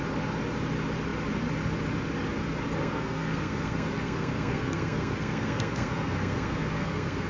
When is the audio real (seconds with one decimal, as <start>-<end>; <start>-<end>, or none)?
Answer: 0.0-2.8

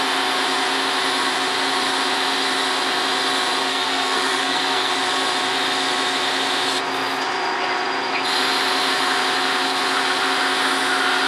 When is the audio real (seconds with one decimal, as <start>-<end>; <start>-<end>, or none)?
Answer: 0.0-3.7; 4.9-11.3

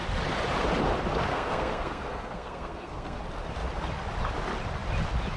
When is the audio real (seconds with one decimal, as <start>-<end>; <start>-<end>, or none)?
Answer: 0.0-1.3; 3.2-5.4

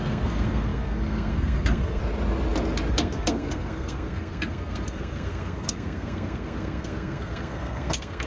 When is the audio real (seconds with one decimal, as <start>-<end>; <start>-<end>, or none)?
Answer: 2.0-2.9

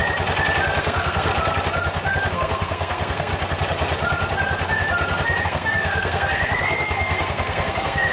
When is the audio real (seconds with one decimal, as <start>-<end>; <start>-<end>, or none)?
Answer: 0.0-0.8; 1.3-2.3; 3.3-5.4

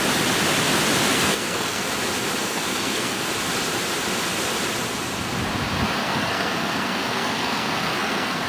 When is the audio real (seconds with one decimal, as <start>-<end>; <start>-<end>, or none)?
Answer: 0.0-1.1; 1.9-2.4; 3.3-6.0

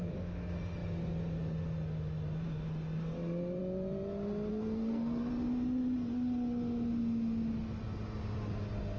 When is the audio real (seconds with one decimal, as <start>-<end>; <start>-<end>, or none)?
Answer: 0.0-4.5; 5.3-9.0

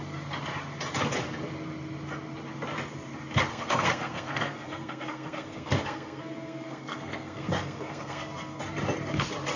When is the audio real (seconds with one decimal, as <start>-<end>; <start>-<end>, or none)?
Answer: 0.0-3.5; 8.6-9.6